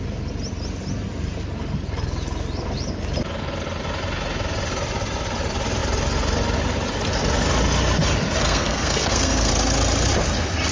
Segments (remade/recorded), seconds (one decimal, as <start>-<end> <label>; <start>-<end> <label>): 0.0-8.4 recorded; 8.4-9.5 remade; 9.5-10.7 recorded